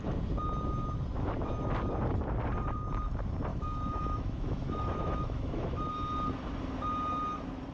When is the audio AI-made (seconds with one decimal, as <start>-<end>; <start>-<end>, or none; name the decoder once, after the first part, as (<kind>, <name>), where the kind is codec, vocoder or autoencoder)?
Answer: 3.5-5.9 (autoencoder, DAC-VAE)